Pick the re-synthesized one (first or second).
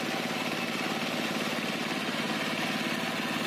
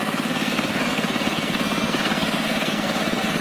second